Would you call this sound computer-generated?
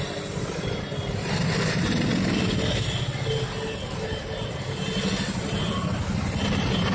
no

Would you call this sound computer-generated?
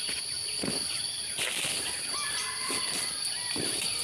no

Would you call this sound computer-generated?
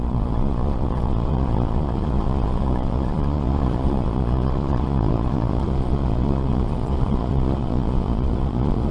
yes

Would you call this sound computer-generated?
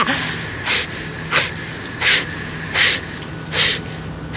no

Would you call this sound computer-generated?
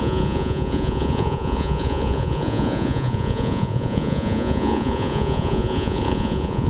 yes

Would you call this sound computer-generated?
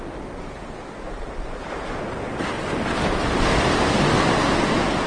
no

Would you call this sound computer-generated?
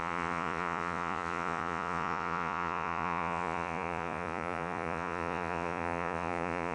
yes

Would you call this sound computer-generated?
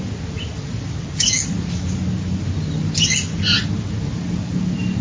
no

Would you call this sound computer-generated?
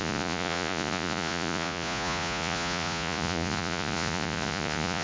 yes